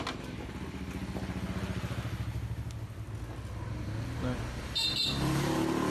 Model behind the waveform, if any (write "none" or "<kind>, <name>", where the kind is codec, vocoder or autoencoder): none